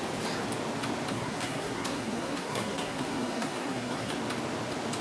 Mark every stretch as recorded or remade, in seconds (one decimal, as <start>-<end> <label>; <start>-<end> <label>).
0.0-1.1 recorded; 1.1-4.1 remade; 4.1-5.0 recorded